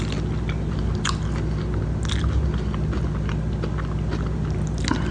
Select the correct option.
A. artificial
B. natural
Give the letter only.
B